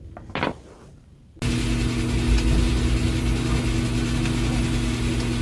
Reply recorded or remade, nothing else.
recorded